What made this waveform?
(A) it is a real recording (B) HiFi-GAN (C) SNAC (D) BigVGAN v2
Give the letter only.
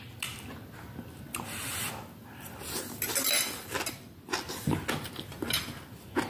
A